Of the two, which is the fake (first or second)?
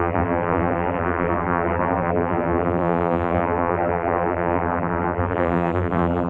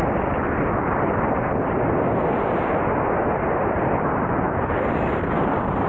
first